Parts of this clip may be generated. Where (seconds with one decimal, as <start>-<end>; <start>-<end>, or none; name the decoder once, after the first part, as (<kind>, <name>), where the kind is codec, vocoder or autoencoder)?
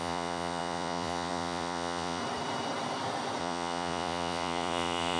0.0-2.2 (vocoder, Vocos); 3.4-5.2